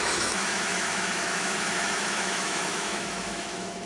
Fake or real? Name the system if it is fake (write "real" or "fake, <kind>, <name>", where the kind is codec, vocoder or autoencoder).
fake, autoencoder, DAC-VAE